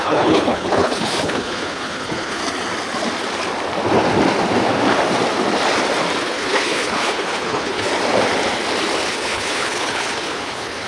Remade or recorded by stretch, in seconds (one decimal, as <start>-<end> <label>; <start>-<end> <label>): 0.0-2.4 remade; 2.4-6.2 recorded; 6.2-7.9 remade; 7.9-9.1 recorded; 9.1-10.9 remade